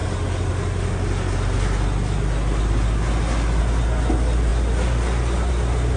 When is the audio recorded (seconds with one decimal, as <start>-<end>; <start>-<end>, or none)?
0.0-6.0